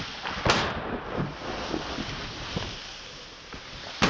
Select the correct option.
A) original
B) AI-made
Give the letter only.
A